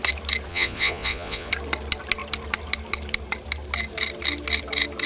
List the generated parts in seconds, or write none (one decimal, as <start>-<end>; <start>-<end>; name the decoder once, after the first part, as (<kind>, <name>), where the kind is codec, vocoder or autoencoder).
0.5-1.5 (vocoder, Vocos)